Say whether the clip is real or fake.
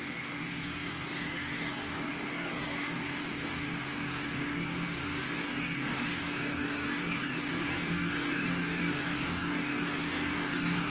fake